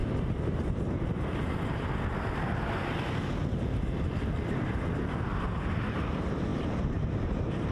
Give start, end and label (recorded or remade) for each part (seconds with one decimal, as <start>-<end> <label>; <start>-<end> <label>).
0.0-1.9 remade; 1.9-5.3 recorded; 5.3-5.8 remade; 5.8-6.5 recorded; 6.5-7.7 remade